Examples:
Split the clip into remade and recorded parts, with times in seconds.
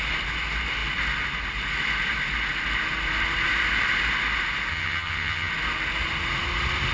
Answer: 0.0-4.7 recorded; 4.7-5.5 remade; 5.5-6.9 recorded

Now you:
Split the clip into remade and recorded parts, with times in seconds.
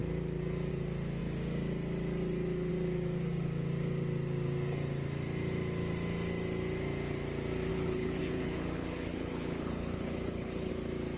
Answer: 0.0-7.7 recorded; 7.7-10.7 remade; 10.7-11.2 recorded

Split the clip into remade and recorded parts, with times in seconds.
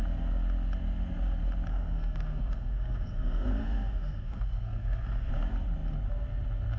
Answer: 0.0-1.7 recorded; 1.7-5.3 remade; 5.3-6.8 recorded